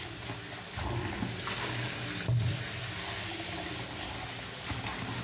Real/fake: real